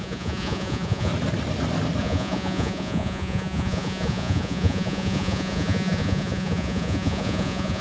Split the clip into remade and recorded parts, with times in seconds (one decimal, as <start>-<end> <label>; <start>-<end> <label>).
0.0-1.1 remade; 1.1-2.0 recorded; 2.0-7.8 remade